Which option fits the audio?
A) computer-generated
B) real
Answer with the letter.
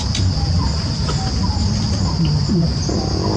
B